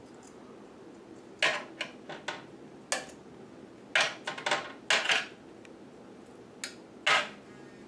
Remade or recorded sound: recorded